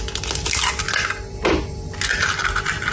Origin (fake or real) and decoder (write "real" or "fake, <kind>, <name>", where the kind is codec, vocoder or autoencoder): real